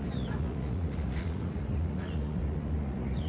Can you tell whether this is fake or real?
fake